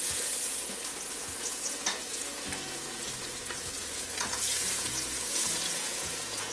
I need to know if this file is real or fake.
fake